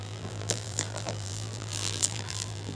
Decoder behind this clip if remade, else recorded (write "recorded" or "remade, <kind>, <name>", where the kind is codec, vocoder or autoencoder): remade, vocoder, BigVGAN v2